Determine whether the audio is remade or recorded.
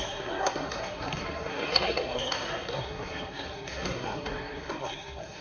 remade